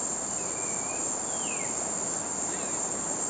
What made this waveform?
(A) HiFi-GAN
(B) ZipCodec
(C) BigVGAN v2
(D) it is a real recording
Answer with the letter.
D